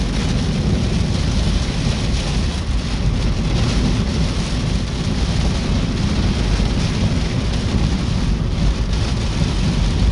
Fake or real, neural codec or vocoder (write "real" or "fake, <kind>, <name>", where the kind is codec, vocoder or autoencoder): real